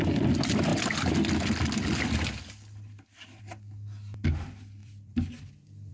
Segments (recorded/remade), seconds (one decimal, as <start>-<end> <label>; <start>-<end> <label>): 0.0-4.8 recorded; 4.8-5.9 remade